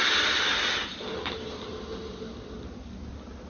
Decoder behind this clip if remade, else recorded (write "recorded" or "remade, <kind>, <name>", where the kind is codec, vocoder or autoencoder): recorded